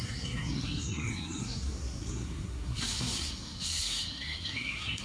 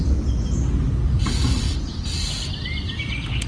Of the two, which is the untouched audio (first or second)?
second